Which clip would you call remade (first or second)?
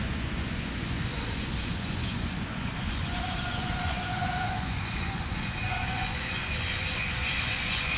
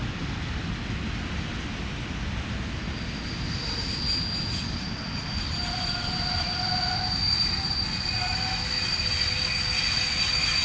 first